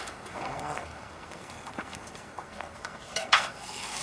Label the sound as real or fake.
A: fake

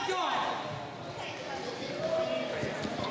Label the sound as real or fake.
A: real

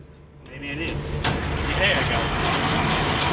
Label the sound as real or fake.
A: real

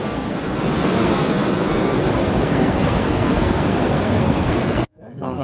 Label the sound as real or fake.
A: fake